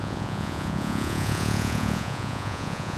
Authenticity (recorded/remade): remade